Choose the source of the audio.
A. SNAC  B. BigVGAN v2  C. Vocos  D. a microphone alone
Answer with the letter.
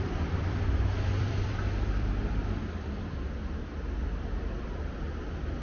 B